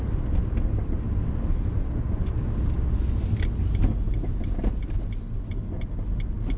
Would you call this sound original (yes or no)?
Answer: yes